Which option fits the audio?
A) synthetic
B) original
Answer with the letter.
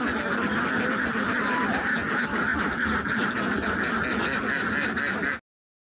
B